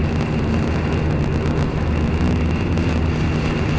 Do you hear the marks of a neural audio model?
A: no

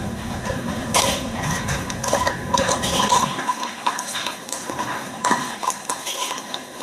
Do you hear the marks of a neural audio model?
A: yes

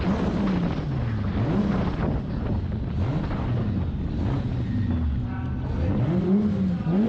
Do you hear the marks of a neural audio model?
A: no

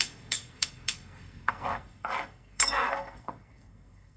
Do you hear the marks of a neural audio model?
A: yes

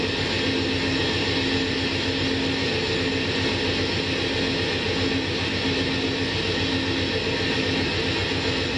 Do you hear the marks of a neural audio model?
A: no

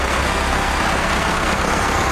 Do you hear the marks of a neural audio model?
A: yes